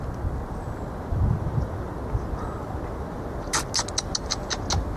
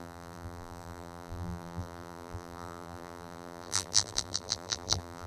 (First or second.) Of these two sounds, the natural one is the first